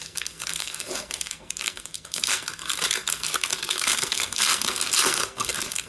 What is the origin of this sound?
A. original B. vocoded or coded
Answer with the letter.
B